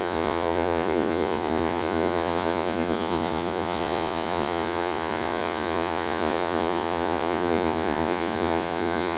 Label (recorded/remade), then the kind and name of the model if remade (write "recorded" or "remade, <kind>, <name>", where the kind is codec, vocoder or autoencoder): remade, vocoder, Vocos